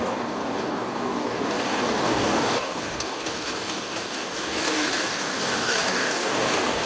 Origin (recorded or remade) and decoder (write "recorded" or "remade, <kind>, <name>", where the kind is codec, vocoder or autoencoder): remade, codec, DAC